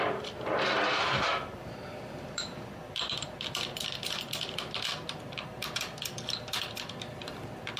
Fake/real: fake